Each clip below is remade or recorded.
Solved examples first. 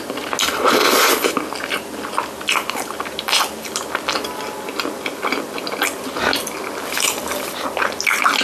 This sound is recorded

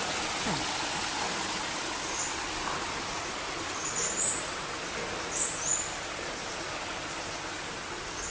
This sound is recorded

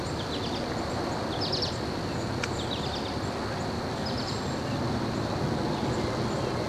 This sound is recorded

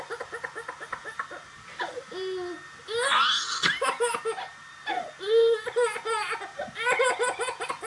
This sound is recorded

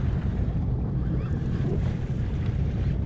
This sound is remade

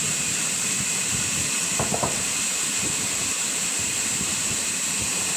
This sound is remade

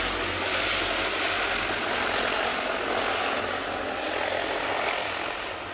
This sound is recorded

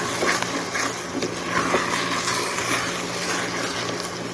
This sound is recorded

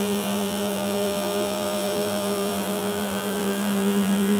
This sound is remade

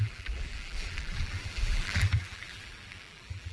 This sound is remade